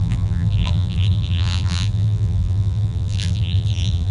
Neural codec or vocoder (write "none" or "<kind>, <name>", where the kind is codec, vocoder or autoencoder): vocoder, BigVGAN v2